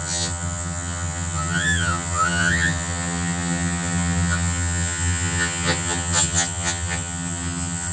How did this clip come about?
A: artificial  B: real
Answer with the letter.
A